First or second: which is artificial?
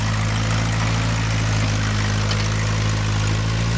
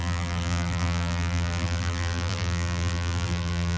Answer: second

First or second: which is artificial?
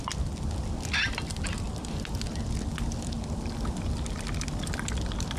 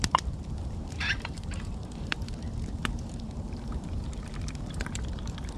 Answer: second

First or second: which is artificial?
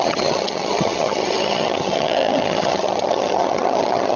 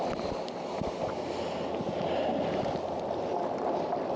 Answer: first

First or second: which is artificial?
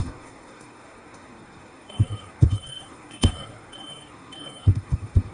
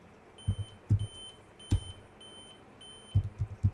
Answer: first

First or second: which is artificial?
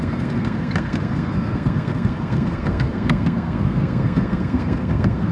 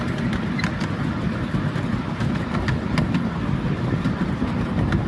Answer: first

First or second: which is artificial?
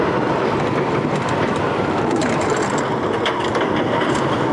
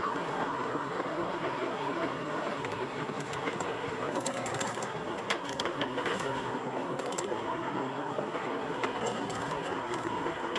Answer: second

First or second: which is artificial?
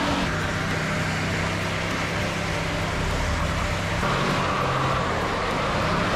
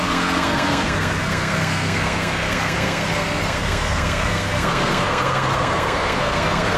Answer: second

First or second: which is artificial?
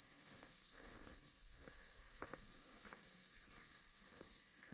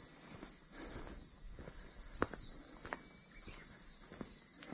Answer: first